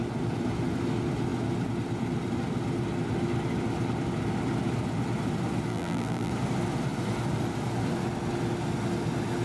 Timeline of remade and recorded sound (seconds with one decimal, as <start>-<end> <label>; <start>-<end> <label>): 0.0-5.7 recorded; 5.7-6.3 remade; 6.3-9.4 recorded